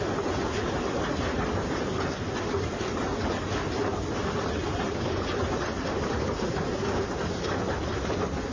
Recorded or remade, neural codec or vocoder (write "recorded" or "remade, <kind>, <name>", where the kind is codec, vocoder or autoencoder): recorded